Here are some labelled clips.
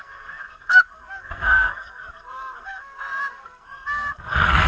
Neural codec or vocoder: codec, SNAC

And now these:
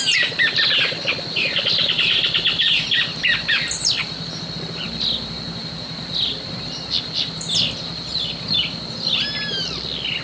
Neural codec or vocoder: none